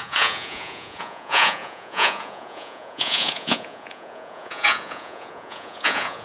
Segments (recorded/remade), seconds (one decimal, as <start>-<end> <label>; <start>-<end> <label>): 0.0-6.2 remade